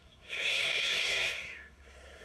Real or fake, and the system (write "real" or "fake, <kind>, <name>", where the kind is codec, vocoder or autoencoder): fake, codec, SNAC